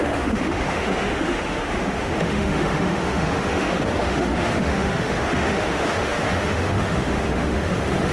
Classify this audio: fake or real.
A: fake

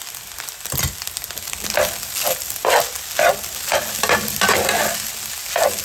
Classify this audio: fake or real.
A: real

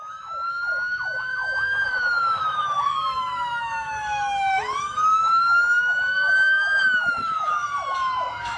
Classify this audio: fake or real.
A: fake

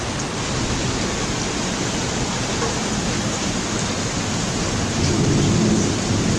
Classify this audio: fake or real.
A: real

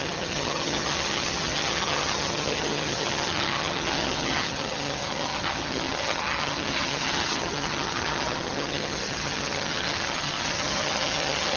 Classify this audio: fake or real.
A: fake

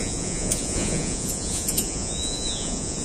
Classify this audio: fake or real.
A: fake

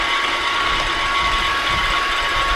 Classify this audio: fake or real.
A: real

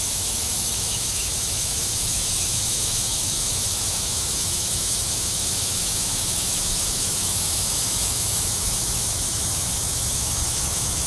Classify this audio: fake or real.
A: fake